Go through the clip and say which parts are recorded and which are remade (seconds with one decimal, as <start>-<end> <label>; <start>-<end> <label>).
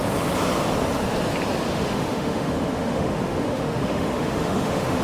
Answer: 0.0-1.7 recorded; 1.7-5.0 remade